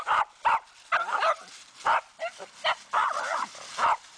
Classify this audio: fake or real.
real